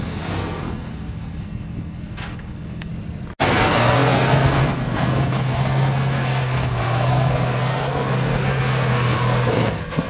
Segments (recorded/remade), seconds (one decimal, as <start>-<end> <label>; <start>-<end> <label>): 0.0-2.9 remade; 2.9-3.4 recorded; 3.4-10.1 remade